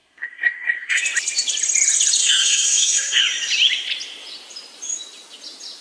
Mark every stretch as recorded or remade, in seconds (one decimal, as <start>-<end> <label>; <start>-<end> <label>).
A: 0.0-1.0 remade; 1.0-2.2 recorded; 2.2-3.2 remade; 3.2-5.8 recorded